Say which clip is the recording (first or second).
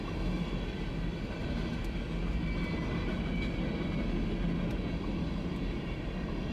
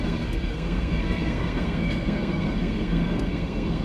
first